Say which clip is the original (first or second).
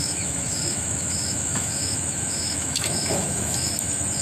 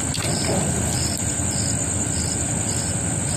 second